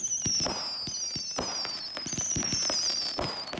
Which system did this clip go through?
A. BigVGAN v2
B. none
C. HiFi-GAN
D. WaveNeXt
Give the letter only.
B